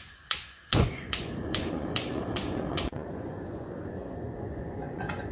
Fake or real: fake